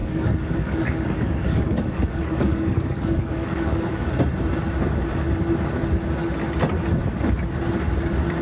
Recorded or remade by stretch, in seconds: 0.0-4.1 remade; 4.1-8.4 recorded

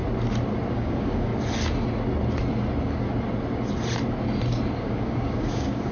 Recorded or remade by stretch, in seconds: 0.0-0.7 recorded; 0.7-1.3 remade; 1.3-4.8 recorded; 4.8-5.9 remade

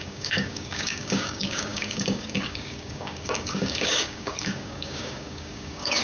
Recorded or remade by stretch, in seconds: 0.0-6.0 remade

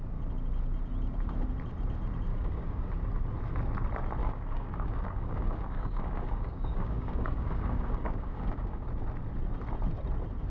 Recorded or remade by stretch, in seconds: 0.0-2.3 recorded; 2.3-2.9 remade; 2.9-4.2 recorded; 4.2-8.9 remade; 8.9-10.5 recorded

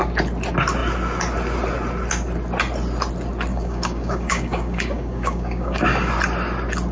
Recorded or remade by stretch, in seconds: 0.0-3.5 recorded; 3.5-6.1 remade; 6.1-6.9 recorded

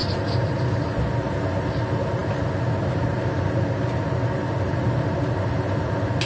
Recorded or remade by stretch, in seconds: 0.0-6.3 recorded

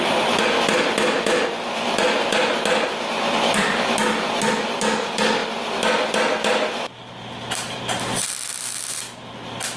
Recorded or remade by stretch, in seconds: 0.0-9.8 recorded